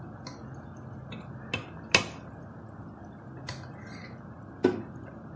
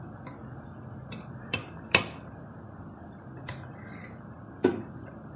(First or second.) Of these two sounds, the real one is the first